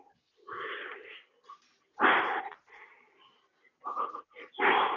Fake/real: real